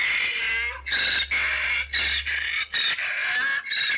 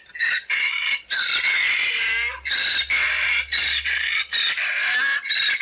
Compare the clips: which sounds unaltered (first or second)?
first